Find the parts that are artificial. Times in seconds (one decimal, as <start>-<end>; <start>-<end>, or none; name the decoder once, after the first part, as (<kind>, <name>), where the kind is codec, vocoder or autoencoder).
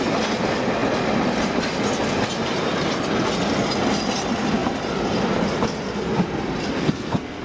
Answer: 6.7-7.4 (codec, SNAC)